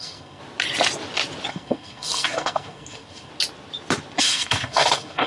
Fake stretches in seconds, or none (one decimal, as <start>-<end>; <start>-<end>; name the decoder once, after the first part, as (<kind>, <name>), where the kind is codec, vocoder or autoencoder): 0.0-0.4 (codec, SNAC); 1.5-3.3; 4.2-5.3